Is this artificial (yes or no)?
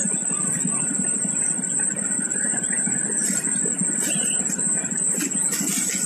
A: no